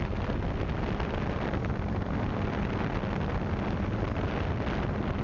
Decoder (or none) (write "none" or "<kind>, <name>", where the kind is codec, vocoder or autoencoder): none